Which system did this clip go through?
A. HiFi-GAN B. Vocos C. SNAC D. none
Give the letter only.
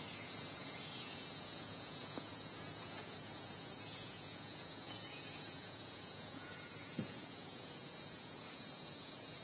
B